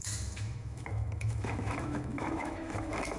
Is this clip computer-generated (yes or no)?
yes